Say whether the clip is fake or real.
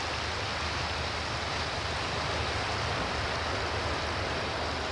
real